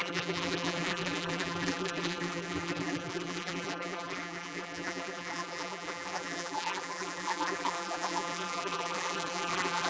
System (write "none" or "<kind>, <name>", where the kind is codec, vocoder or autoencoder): vocoder, BigVGAN v2